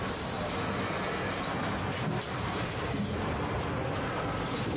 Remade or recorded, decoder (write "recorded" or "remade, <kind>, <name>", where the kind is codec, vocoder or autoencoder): recorded